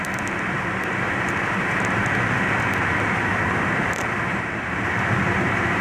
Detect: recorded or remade remade